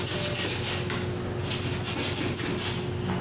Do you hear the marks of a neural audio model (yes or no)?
no